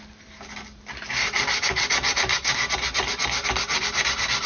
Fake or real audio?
real